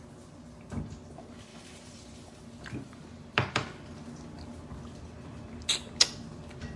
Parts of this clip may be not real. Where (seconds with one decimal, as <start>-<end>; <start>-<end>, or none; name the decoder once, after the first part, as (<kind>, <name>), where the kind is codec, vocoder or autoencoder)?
1.5-2.4 (vocoder, BigVGAN v2)